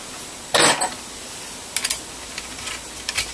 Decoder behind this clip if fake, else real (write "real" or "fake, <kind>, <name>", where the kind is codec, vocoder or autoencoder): real